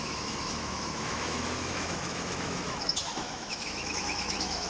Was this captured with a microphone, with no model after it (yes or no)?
no